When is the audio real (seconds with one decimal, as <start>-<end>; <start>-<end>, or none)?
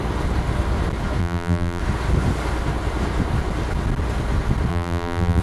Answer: 0.0-1.2; 1.8-4.7